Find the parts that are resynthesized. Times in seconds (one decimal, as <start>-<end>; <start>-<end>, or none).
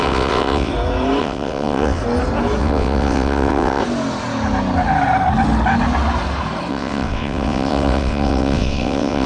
0.0-0.7; 1.2-2.0; 2.6-3.8; 6.7-9.3